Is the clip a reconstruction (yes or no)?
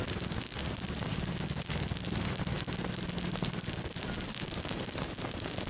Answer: no